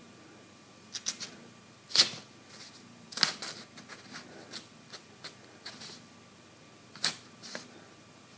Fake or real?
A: real